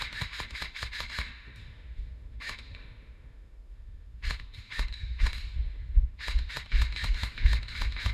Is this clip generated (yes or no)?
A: yes